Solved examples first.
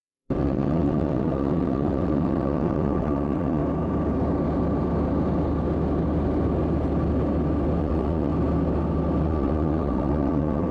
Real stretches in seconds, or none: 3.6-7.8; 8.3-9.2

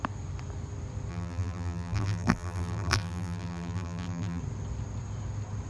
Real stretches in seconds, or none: 0.0-1.1; 4.4-5.7

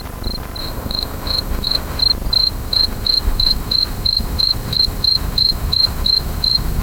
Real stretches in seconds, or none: 0.0-0.6; 2.0-2.4